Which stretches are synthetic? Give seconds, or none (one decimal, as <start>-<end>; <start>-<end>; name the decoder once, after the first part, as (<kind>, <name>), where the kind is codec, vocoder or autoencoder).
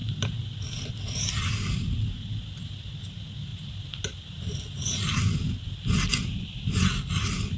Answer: none